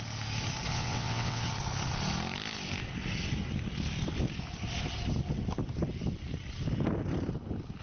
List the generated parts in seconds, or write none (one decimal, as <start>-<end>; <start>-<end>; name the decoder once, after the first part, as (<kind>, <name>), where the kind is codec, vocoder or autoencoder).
0.7-1.5 (vocoder, WaveNeXt)